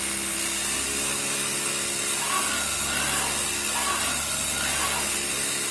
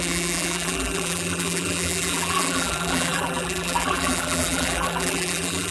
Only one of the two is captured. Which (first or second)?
first